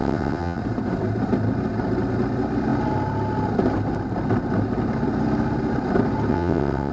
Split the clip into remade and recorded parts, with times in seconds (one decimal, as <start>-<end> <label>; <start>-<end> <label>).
0.0-0.6 remade; 0.6-6.3 recorded; 6.3-6.9 remade